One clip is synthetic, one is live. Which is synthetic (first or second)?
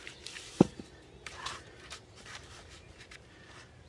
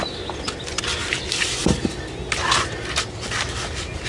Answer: first